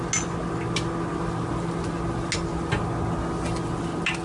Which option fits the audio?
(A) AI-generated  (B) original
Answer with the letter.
B